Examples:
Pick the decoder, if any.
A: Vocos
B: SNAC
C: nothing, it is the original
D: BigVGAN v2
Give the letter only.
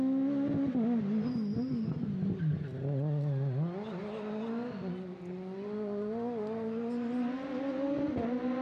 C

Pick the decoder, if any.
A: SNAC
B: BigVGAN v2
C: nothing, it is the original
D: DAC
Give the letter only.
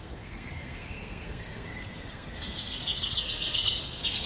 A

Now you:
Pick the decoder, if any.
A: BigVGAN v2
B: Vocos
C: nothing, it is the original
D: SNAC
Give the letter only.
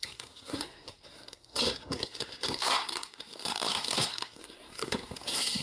D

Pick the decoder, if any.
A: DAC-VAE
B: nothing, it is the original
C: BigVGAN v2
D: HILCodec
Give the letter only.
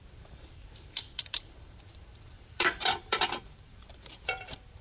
C